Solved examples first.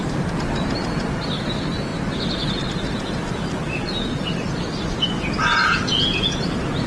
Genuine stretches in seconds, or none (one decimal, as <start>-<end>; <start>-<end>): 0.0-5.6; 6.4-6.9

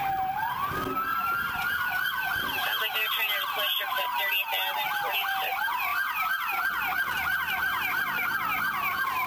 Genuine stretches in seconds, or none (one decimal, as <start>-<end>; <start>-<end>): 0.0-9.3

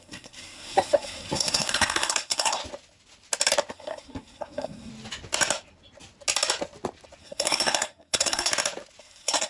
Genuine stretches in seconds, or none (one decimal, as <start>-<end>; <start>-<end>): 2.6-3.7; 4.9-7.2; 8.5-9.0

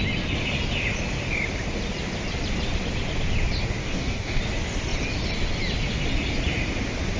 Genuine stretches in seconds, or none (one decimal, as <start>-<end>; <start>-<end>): 0.0-3.8; 4.4-7.2

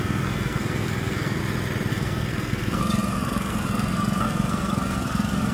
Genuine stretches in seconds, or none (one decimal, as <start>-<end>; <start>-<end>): 1.4-1.9